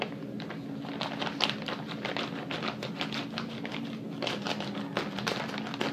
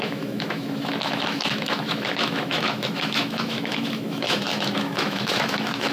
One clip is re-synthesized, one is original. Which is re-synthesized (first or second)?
second